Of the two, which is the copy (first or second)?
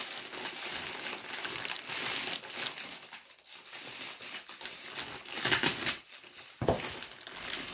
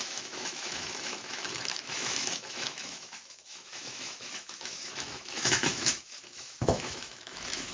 second